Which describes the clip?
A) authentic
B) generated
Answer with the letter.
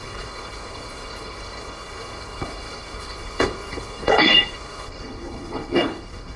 B